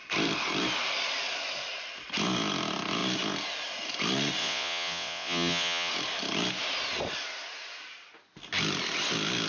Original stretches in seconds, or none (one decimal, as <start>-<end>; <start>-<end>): 0.0-4.4; 5.9-9.5